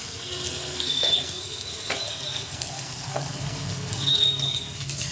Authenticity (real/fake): fake